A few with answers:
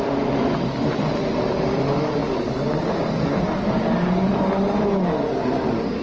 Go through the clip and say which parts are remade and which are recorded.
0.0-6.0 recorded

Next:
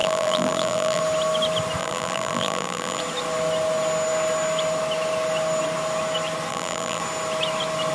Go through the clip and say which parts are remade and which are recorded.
0.0-1.0 remade; 1.0-1.8 recorded; 1.8-3.0 remade; 3.0-6.5 recorded; 6.5-7.0 remade; 7.0-7.9 recorded

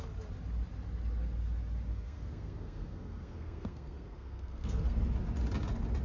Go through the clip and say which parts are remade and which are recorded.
0.0-1.9 recorded; 1.9-5.0 remade; 5.0-6.0 recorded

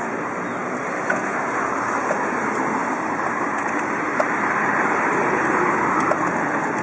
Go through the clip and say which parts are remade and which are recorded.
0.0-2.8 recorded; 2.8-5.3 remade; 5.3-6.8 recorded